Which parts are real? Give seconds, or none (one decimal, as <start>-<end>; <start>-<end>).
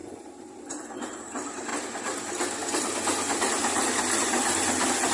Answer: 0.0-5.1